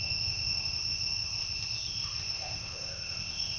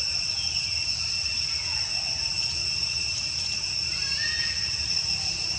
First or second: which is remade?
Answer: first